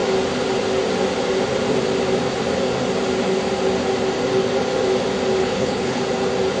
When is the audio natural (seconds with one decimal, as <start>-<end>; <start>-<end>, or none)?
0.0-5.4; 6.0-6.6